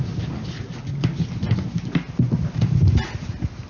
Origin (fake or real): real